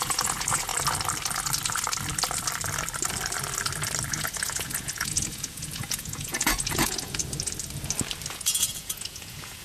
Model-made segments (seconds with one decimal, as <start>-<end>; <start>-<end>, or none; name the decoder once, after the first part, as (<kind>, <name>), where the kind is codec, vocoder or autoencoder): 0.0-0.7 (vocoder, Vocos); 4.1-7.2; 8.3-9.6